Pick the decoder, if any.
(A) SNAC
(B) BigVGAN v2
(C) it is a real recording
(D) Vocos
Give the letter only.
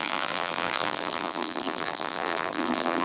B